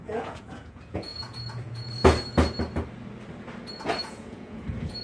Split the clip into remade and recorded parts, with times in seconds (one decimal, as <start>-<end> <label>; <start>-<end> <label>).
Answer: 0.0-2.0 remade; 2.0-3.7 recorded; 3.7-5.0 remade